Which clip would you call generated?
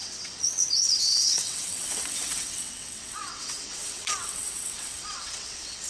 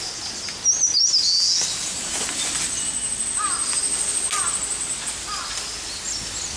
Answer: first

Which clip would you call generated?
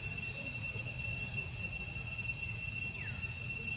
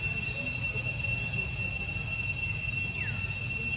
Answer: first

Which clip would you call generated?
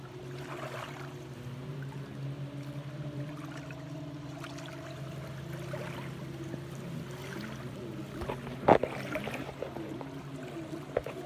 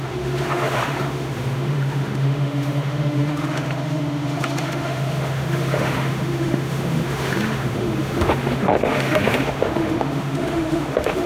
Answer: second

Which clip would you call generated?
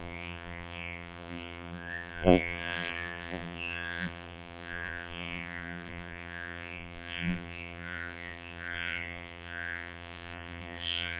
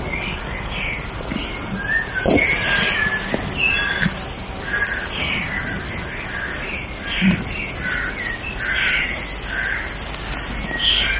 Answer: first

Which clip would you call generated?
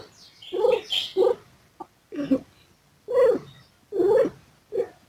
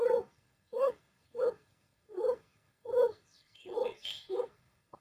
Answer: second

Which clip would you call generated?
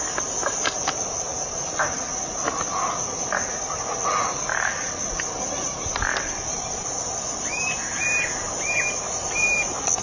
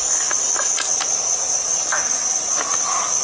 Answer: first